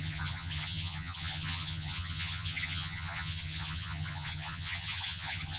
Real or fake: fake